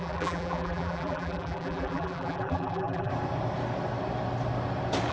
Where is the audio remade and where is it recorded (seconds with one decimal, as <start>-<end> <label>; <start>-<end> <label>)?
0.0-3.1 remade; 3.1-5.1 recorded